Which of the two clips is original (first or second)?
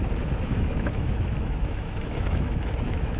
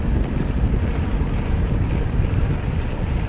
second